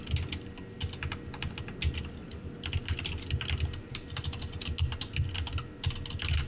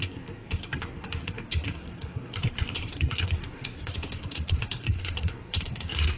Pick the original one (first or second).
first